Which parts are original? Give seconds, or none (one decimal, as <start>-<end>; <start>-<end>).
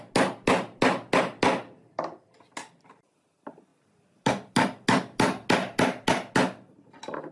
0.0-7.3